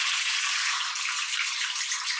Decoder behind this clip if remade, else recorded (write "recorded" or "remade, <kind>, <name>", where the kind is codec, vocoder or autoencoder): recorded